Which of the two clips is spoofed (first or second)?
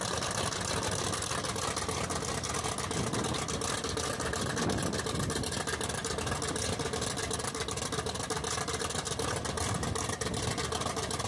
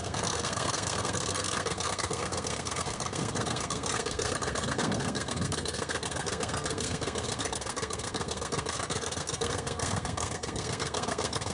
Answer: second